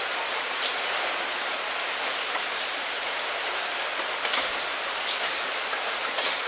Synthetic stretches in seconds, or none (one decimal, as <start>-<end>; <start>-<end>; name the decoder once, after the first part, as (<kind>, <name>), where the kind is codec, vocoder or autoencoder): none